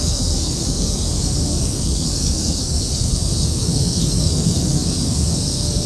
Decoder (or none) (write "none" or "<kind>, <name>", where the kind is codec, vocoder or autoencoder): codec, SNAC